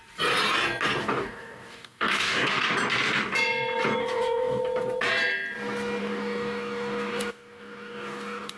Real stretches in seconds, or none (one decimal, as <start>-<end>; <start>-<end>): 0.0-1.0; 2.7-4.0; 4.6-6.0